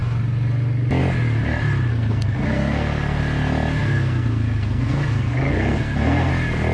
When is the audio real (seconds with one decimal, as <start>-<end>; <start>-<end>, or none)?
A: 0.0-1.9; 3.2-3.8; 6.3-6.7